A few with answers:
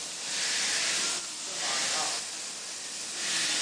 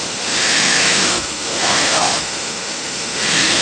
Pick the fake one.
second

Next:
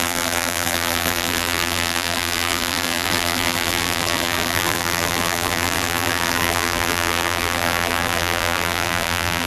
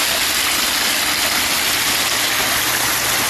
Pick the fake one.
first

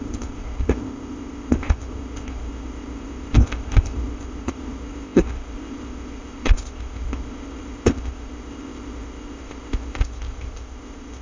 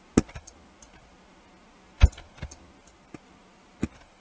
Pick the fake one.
first